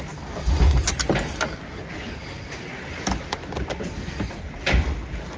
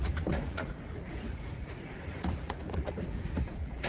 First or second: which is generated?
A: second